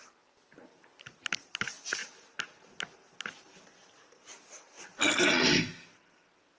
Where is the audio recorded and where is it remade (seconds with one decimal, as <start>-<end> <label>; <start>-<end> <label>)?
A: 0.0-6.6 recorded